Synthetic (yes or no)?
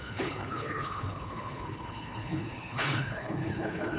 yes